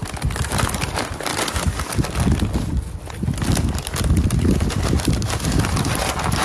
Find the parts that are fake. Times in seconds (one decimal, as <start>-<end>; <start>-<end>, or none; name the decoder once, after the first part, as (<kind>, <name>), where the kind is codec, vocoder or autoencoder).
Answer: none